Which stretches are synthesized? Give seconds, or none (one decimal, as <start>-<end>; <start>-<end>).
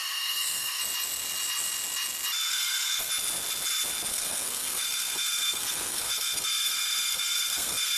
0.0-0.8; 2.5-3.1; 4.1-8.0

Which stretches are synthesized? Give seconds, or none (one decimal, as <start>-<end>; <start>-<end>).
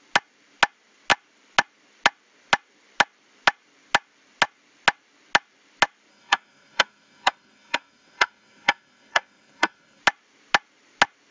6.1-10.0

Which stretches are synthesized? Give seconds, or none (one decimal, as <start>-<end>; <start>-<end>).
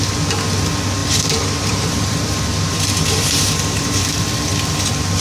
1.0-4.1